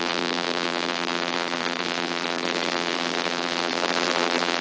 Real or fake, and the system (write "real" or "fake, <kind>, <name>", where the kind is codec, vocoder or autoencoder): fake, vocoder, BigVGAN v2